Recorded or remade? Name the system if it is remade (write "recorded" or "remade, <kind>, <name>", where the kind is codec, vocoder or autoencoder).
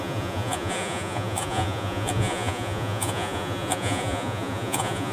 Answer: remade, vocoder, Vocos